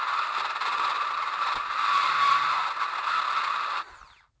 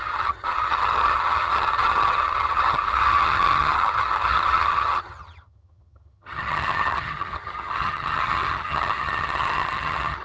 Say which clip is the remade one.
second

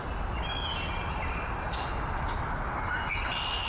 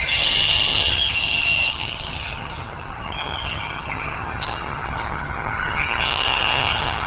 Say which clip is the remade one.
second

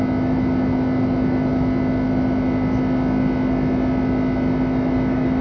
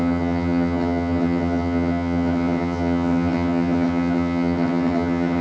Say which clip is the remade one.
second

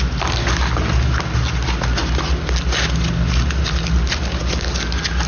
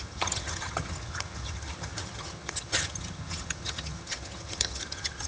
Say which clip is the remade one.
second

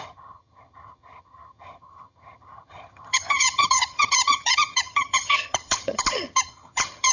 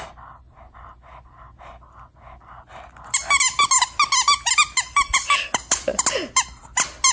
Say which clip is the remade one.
first